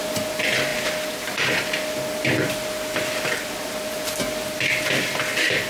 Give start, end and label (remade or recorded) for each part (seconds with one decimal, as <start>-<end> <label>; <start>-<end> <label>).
0.0-5.7 recorded